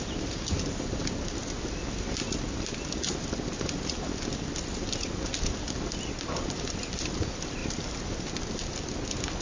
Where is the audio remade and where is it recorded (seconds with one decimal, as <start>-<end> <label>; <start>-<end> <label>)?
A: 0.0-9.4 recorded